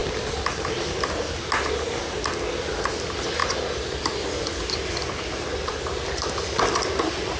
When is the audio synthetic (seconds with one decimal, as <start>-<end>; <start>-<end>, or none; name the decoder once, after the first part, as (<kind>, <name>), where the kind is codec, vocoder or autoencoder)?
3.4-7.4 (vocoder, BigVGAN v2)